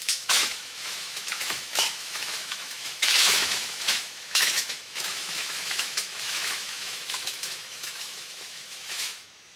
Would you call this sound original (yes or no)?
no